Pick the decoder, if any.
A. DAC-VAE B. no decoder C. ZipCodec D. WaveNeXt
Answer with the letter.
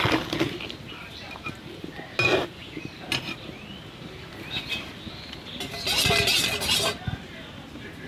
B